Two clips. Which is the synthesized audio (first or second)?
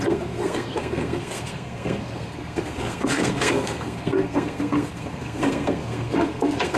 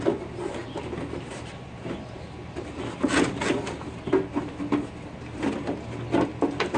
first